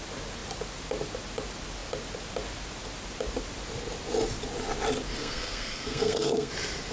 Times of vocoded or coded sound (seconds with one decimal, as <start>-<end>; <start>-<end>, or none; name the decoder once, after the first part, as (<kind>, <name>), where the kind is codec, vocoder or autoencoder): 5.2-6.5 (codec, SNAC)